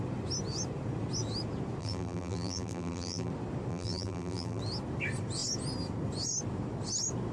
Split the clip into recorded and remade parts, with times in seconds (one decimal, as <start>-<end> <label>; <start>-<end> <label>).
0.0-1.8 recorded; 1.8-3.3 remade; 3.3-3.7 recorded; 3.7-4.6 remade; 4.6-7.3 recorded